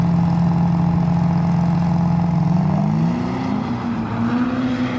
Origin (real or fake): real